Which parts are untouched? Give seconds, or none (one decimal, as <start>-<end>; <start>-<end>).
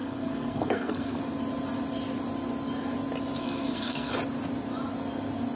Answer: 1.2-3.4; 4.1-5.5